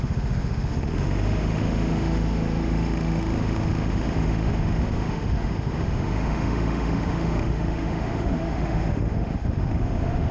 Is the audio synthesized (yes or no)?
yes